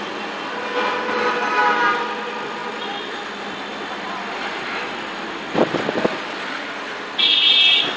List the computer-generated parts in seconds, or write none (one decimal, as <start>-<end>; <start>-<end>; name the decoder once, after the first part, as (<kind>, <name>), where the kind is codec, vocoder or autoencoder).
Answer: none